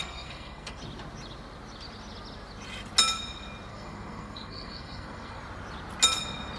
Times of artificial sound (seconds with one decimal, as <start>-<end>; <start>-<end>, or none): 0.0-0.8; 3.7-5.4